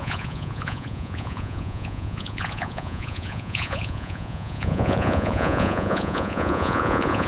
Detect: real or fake fake